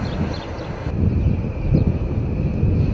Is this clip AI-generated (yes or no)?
no